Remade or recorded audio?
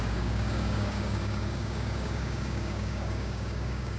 remade